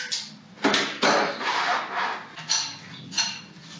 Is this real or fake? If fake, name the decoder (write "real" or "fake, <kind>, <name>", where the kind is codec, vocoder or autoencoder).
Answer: real